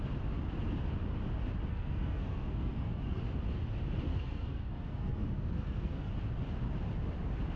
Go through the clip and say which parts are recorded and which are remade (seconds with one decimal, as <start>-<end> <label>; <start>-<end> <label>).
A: 0.0-1.7 recorded; 1.7-3.2 remade; 3.2-4.1 recorded; 4.1-6.1 remade; 6.1-7.6 recorded

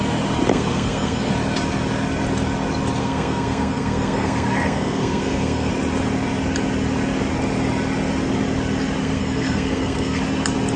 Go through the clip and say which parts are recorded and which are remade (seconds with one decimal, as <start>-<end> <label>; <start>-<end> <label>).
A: 0.0-0.5 recorded; 0.5-1.3 remade; 1.3-3.0 recorded; 3.0-5.7 remade; 5.7-9.0 recorded; 9.0-10.2 remade; 10.2-10.8 recorded

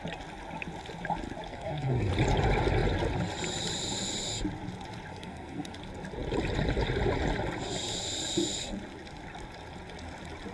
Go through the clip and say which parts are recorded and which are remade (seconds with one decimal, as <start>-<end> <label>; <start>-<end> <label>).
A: 0.0-1.5 recorded; 1.5-2.1 remade; 2.1-5.1 recorded; 5.1-5.7 remade; 5.7-10.5 recorded

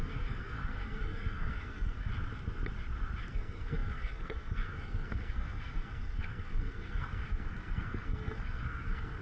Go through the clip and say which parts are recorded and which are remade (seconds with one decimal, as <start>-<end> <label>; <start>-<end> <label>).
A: 0.0-2.1 remade; 2.1-3.2 recorded; 3.2-9.2 remade

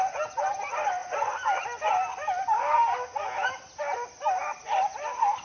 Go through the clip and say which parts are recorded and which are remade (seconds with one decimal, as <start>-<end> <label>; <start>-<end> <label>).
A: 0.0-5.4 recorded

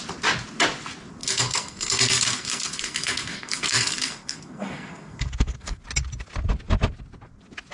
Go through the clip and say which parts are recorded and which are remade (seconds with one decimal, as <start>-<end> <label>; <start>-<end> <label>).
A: 0.0-1.2 recorded; 1.2-5.8 remade; 5.8-7.7 recorded

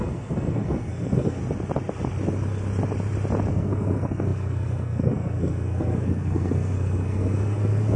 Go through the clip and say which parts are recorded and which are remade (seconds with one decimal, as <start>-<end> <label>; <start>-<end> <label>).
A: 0.0-1.4 remade; 1.4-3.5 recorded; 3.5-8.0 remade